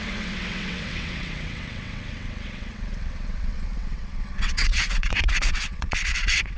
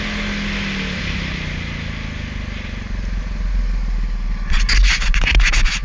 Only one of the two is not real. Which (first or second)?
first